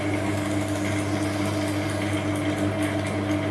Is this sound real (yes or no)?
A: yes